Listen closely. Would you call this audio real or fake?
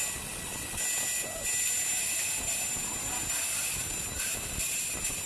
real